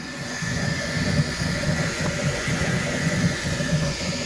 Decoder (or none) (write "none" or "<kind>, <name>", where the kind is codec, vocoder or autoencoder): vocoder, Vocos